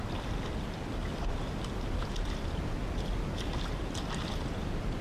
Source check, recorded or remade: recorded